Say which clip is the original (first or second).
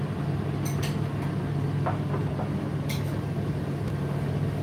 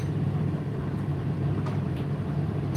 first